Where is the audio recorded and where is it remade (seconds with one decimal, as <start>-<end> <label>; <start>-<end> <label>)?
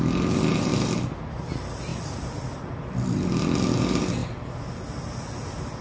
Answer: 0.0-0.7 remade; 0.7-1.3 recorded; 1.3-4.2 remade; 4.2-5.8 recorded